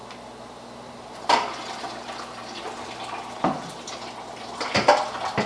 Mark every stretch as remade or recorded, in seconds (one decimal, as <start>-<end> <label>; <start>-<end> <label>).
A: 0.0-5.5 remade